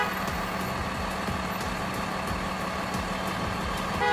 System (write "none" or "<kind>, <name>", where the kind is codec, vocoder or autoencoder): none